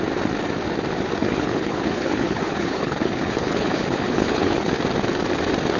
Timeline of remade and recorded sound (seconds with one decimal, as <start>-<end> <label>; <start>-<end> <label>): 0.0-1.2 recorded; 1.2-4.7 remade; 4.7-5.8 recorded